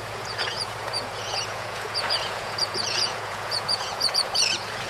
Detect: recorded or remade remade